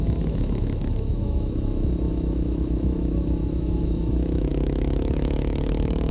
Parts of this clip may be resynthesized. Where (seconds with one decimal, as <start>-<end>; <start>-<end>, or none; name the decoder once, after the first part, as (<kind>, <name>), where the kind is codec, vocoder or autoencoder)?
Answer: 0.0-6.1 (autoencoder, DAC-VAE)